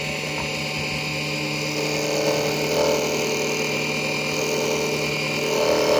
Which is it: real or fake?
real